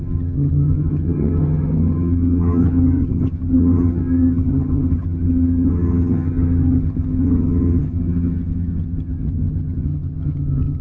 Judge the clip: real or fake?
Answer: fake